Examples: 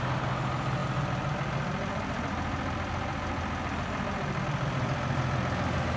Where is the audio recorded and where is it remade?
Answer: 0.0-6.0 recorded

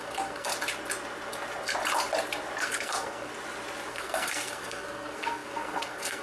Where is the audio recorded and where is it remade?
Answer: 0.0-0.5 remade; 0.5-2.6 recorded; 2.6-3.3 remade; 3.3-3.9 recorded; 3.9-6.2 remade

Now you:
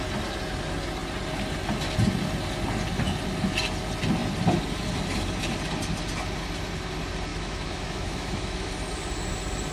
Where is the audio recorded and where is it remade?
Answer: 0.0-7.3 recorded; 7.3-8.7 remade; 8.7-9.7 recorded

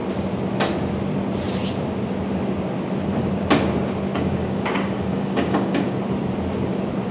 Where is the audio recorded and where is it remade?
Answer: 0.0-4.1 recorded; 4.1-6.0 remade; 6.0-7.1 recorded

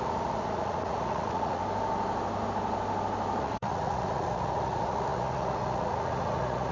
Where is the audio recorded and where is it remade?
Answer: 0.0-1.6 remade; 1.6-3.4 recorded; 3.4-6.7 remade

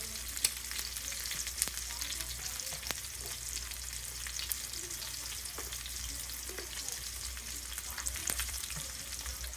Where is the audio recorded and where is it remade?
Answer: 0.0-8.2 recorded; 8.2-8.9 remade; 8.9-9.6 recorded

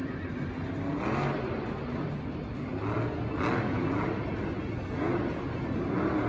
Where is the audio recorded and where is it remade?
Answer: 0.0-6.3 recorded